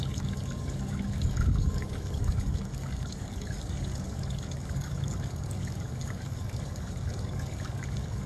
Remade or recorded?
remade